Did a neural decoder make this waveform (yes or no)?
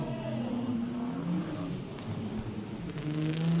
no